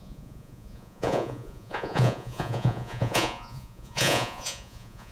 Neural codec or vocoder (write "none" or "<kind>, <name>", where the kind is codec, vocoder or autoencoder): vocoder, Vocos